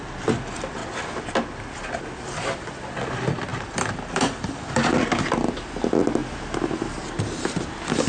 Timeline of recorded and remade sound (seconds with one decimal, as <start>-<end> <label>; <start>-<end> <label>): 0.0-0.8 remade; 0.8-2.0 recorded; 2.0-6.2 remade; 6.2-8.1 recorded

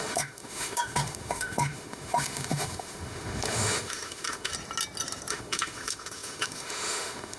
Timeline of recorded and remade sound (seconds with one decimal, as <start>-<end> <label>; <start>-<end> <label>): 0.0-4.5 remade; 4.5-5.3 recorded; 5.3-7.4 remade

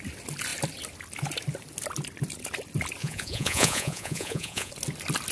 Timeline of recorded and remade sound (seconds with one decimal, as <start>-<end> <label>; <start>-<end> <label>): 0.0-3.0 recorded; 3.0-4.7 remade; 4.7-5.3 recorded

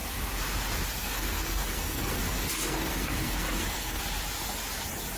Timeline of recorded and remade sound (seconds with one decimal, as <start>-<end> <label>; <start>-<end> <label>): 0.0-1.0 recorded; 1.0-4.0 remade; 4.0-5.2 recorded

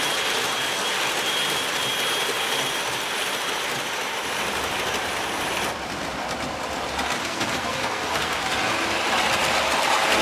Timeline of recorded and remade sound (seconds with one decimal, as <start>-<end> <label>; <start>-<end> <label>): 0.0-7.2 recorded; 7.2-8.4 remade; 8.4-10.2 recorded